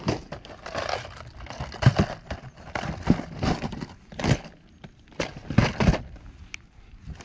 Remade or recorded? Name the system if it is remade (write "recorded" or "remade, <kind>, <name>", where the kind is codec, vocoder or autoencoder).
recorded